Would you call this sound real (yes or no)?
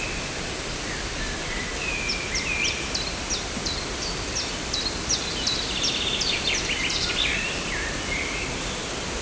no